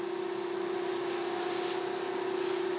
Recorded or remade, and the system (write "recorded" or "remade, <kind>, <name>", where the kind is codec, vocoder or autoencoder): recorded